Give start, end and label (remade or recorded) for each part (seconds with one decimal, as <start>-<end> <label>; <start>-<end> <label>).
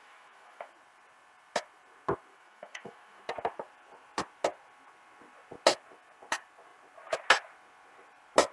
0.0-0.7 remade; 0.7-2.3 recorded; 2.3-3.2 remade; 3.2-8.5 recorded